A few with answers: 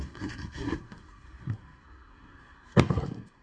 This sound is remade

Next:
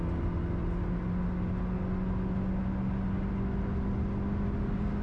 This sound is recorded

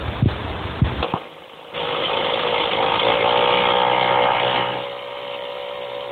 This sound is recorded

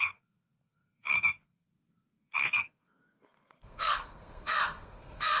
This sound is remade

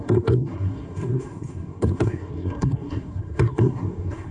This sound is remade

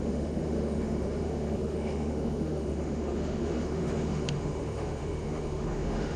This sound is remade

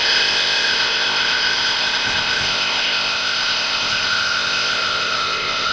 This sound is remade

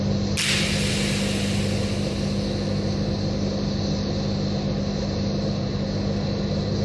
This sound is recorded